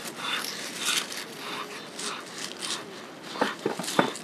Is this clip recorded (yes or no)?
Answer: yes